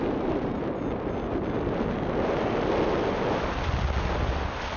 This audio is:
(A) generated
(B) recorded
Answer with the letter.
B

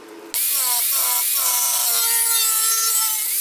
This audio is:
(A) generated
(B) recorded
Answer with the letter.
B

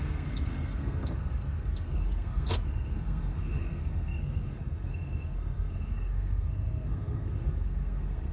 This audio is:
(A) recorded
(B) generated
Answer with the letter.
B